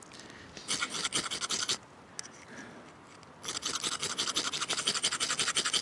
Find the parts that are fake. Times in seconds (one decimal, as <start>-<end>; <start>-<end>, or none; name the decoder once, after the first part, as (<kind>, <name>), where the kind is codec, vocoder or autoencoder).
none

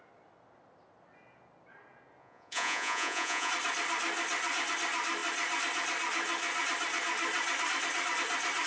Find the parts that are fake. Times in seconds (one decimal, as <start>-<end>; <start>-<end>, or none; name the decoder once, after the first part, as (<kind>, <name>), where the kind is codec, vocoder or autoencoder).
2.2-3.5 (vocoder, Vocos)

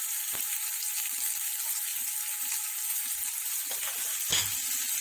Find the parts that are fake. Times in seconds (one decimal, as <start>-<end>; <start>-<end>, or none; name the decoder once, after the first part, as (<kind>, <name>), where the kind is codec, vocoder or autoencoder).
none

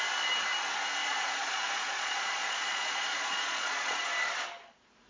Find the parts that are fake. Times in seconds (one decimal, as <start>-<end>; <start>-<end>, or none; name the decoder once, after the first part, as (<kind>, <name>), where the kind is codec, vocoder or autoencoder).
1.0-4.1 (vocoder, Vocos)

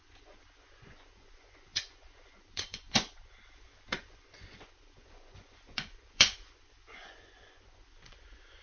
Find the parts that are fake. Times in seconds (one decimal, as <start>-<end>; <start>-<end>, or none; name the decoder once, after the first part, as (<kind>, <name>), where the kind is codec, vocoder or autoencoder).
0.0-8.6 (vocoder, Vocos)

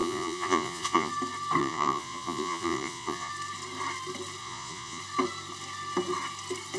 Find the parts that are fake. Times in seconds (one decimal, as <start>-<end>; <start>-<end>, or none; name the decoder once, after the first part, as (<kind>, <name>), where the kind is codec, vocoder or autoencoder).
0.0-1.1 (vocoder, Vocos); 1.6-3.3; 4.4-5.0

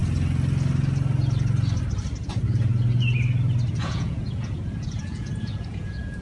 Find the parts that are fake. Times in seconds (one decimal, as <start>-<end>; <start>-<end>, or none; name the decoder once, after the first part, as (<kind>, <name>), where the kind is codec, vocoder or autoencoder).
3.7-6.2 (vocoder, Vocos)

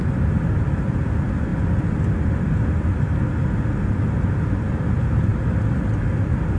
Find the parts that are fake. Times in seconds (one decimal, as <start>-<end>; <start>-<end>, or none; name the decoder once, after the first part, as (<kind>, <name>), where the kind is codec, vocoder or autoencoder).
none